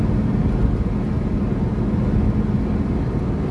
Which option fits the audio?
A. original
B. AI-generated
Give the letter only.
A